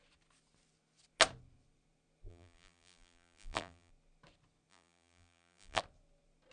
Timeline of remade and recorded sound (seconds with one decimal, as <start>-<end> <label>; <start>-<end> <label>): 0.0-2.3 recorded; 2.3-3.9 remade; 3.9-4.7 recorded; 4.7-5.8 remade; 5.8-6.5 recorded